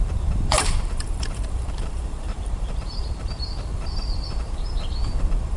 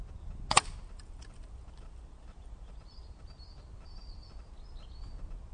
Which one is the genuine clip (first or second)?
second